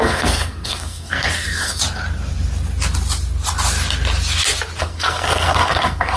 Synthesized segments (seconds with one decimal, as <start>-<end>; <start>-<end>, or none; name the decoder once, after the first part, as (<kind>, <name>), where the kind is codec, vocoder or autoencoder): 0.0-1.8 (codec, SNAC); 4.8-6.2